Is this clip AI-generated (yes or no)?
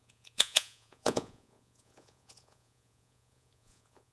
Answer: yes